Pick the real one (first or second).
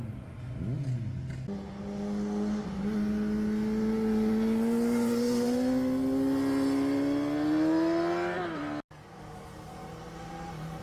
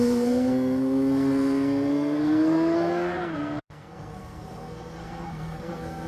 first